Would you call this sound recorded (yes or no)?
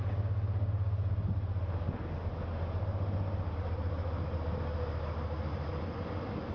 yes